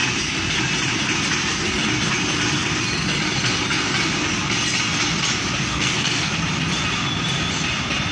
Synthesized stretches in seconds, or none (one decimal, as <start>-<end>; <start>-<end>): 5.7-6.3